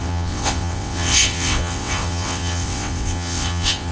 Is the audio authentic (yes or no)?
no